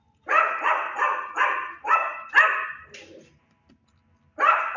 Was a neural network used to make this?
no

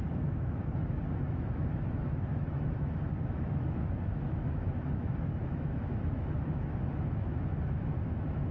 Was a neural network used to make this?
yes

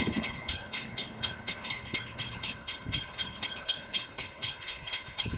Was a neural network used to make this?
yes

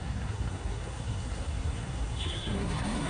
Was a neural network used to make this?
yes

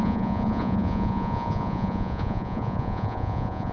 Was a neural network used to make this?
yes